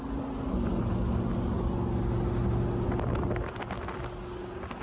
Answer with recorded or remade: recorded